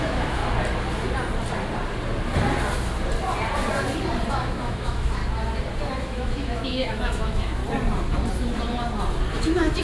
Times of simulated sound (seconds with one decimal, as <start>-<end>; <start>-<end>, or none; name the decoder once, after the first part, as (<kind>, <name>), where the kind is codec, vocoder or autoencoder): 0.0-0.4 (autoencoder, DAC-VAE); 4.3-5.2; 5.9-7.6; 9.3-9.8